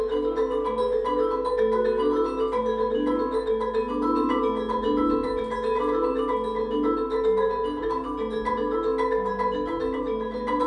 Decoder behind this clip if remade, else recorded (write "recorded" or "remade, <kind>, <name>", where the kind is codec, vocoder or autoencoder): recorded